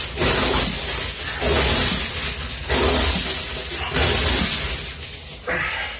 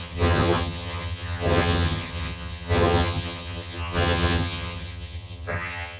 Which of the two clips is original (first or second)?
first